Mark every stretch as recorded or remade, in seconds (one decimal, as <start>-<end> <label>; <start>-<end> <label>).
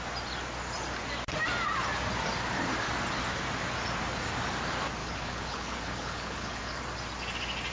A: 0.0-5.0 recorded; 5.0-6.8 remade; 6.8-7.7 recorded